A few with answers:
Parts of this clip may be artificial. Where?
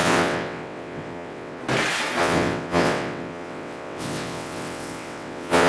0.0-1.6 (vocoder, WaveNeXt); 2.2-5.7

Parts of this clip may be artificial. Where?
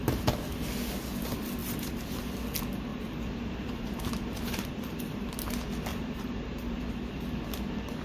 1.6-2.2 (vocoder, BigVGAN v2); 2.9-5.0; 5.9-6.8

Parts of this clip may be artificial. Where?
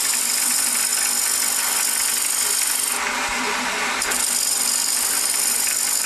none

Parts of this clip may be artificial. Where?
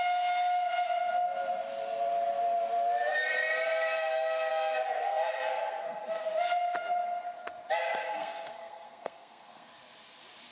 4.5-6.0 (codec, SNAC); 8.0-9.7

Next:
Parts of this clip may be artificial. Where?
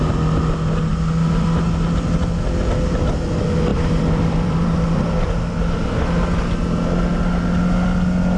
3.7-5.2 (vocoder, BigVGAN v2)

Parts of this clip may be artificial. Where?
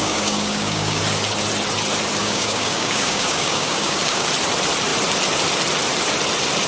0.0-1.0 (codec, DAC); 2.2-4.3